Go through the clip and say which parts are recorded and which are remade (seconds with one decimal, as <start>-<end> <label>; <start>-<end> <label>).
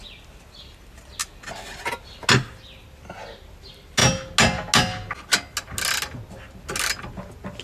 0.0-7.6 recorded